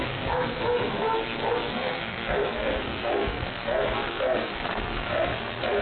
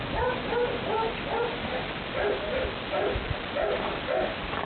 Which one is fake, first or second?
first